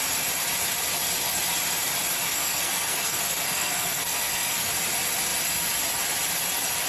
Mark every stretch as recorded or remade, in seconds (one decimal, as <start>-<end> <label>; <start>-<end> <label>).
0.0-2.3 recorded; 2.3-4.7 remade; 4.7-6.9 recorded